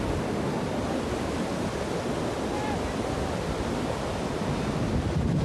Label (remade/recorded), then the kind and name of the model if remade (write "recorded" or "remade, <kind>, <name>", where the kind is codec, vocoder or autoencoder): recorded